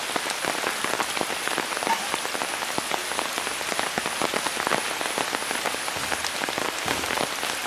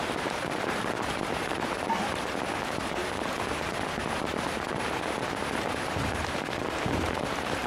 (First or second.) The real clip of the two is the first